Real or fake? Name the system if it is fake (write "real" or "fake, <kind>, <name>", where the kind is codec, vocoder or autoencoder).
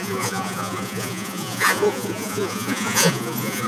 fake, vocoder, Vocos